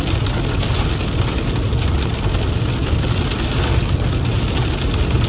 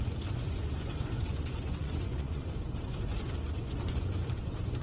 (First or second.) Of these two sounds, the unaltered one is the first